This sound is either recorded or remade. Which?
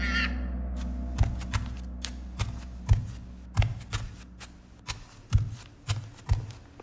recorded